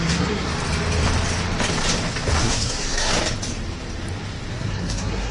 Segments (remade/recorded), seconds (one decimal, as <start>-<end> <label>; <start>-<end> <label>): 0.0-0.5 remade; 0.5-2.4 recorded; 2.4-3.1 remade; 3.1-4.5 recorded; 4.5-5.3 remade